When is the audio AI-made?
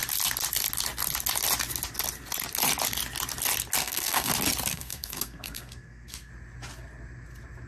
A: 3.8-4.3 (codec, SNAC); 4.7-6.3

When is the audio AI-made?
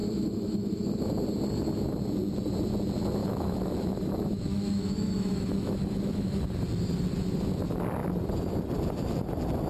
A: 0.0-1.0 (autoencoder, DAC-VAE); 3.2-6.4